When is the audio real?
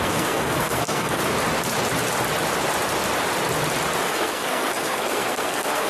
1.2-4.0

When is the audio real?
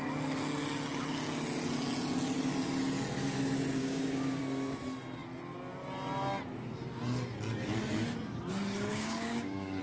0.0-3.8; 4.4-8.9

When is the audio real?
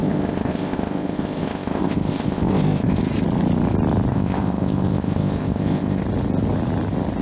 3.0-4.1; 6.0-7.2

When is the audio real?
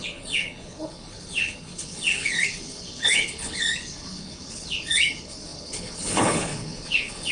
none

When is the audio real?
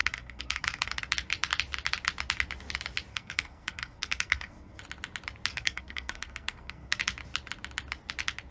1.0-3.1; 4.8-5.5; 7.0-8.5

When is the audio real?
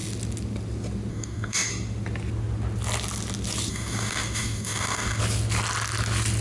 0.0-1.1; 1.7-3.7; 5.2-6.4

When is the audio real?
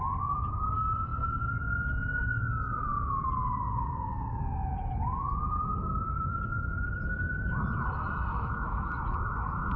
0.0-8.3; 8.9-9.8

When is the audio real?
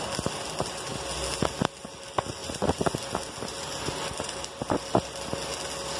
0.0-6.0